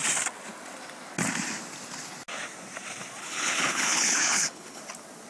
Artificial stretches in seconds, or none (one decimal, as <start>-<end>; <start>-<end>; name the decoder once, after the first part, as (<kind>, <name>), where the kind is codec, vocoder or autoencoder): 3.2-4.8 (codec, HILCodec)